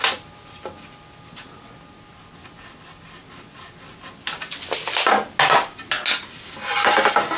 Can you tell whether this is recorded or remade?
recorded